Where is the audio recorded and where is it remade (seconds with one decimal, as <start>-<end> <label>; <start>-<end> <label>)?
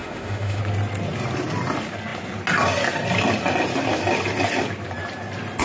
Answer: 0.0-0.6 remade; 0.6-5.6 recorded